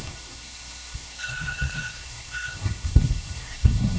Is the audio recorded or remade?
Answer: remade